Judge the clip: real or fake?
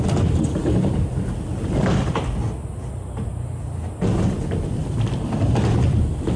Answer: real